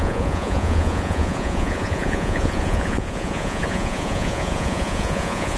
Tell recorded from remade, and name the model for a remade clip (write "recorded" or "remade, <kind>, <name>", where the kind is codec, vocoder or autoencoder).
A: remade, vocoder, Vocos